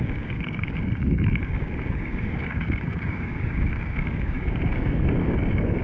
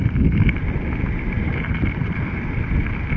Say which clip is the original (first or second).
second